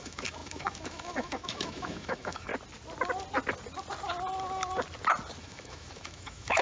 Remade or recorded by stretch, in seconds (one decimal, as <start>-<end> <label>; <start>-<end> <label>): 0.0-2.5 remade; 2.5-5.4 recorded; 5.4-6.6 remade